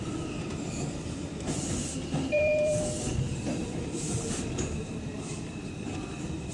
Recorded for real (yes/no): no